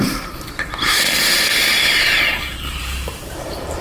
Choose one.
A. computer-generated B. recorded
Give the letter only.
A